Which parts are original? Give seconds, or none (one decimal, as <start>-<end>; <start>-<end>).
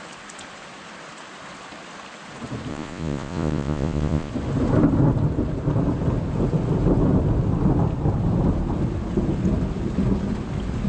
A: 0.0-2.7; 4.3-10.9